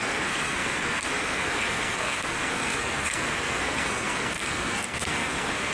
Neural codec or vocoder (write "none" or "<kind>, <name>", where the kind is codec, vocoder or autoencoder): codec, SNAC